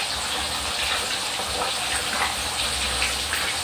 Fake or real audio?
real